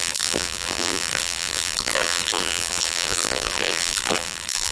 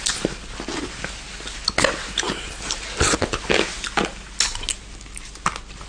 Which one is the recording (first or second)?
second